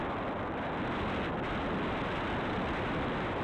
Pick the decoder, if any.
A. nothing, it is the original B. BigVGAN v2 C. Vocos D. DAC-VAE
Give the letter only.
A